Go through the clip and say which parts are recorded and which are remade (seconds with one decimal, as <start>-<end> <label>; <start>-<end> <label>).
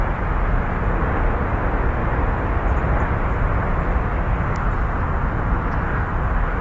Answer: 0.0-2.0 recorded; 2.0-4.1 remade; 4.1-6.6 recorded